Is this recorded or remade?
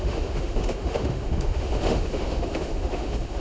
remade